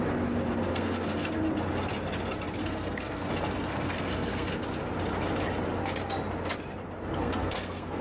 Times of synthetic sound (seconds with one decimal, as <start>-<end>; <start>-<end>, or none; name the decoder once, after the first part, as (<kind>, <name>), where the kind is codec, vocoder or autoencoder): 0.7-1.4 (codec, SNAC); 2.6-3.3; 3.7-4.6; 7.2-8.0